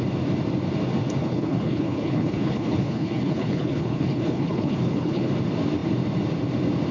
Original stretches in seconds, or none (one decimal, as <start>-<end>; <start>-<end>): 0.0-1.2; 5.3-6.9